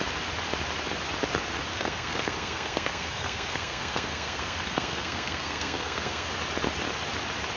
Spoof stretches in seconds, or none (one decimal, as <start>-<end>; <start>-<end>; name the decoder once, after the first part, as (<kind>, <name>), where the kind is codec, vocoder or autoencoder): 1.7-6.3 (codec, SNAC)